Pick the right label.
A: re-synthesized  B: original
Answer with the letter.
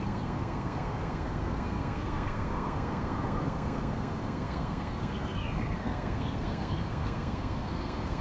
A